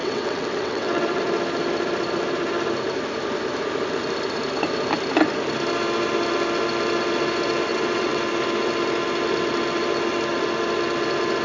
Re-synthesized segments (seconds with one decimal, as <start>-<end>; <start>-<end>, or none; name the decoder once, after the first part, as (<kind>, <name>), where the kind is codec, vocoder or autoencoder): 0.0-1.2 (vocoder, WaveNeXt); 7.7-8.2